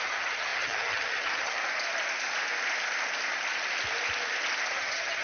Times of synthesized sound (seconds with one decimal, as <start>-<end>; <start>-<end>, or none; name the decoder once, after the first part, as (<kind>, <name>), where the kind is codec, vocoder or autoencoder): 0.0-1.6 (vocoder, HiFi-GAN); 4.7-5.2